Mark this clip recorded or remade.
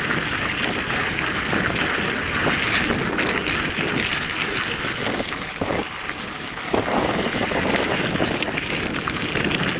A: recorded